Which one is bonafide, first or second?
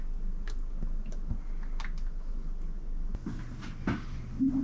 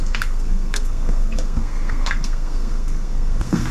first